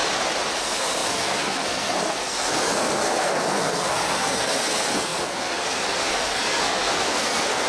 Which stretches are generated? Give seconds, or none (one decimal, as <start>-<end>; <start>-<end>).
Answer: 0.6-7.7